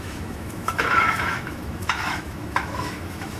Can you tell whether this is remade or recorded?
remade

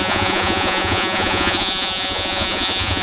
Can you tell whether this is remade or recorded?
remade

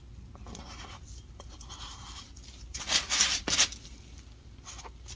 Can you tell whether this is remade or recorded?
recorded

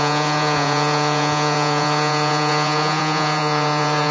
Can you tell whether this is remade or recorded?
remade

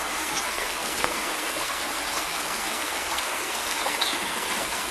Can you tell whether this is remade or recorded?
remade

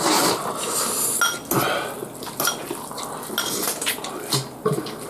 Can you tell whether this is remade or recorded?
recorded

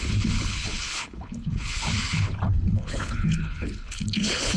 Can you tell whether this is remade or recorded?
remade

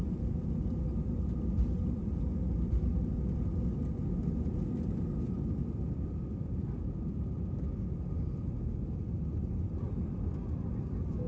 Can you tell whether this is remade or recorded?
recorded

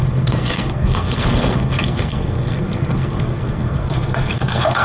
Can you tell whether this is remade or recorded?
remade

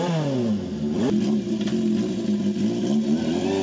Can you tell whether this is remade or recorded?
recorded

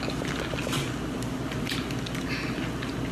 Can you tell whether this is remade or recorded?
recorded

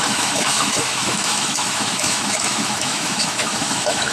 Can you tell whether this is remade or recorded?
remade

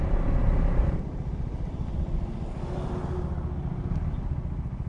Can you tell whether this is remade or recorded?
recorded